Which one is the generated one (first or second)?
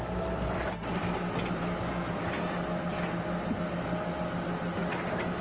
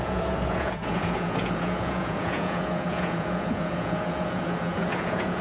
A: second